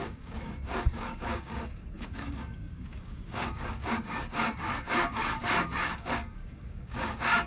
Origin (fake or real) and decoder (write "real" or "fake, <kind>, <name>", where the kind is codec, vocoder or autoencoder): fake, codec, DAC